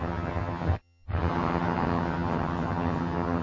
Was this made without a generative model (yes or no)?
no